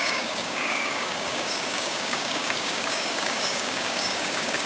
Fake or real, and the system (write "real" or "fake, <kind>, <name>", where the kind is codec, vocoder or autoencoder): fake, codec, DAC